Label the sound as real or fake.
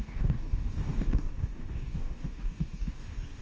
fake